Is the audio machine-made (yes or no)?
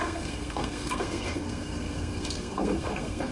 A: yes